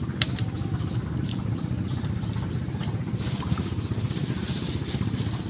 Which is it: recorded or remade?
recorded